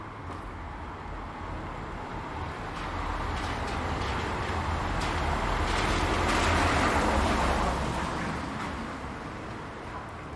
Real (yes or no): yes